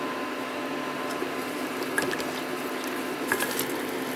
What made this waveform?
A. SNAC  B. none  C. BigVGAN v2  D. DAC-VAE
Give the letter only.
B